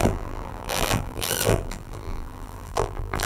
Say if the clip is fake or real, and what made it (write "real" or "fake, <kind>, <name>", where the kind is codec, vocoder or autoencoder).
fake, vocoder, BigVGAN v2